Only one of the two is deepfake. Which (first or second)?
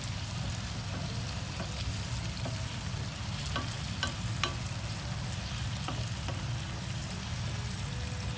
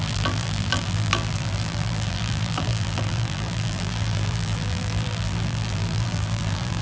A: second